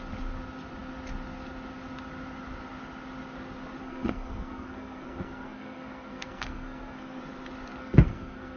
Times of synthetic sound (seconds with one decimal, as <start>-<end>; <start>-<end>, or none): 3.8-7.2; 7.8-8.6